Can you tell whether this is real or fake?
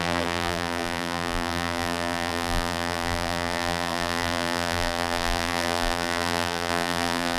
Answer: fake